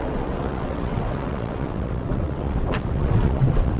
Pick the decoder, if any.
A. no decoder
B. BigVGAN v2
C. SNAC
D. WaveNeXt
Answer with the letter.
D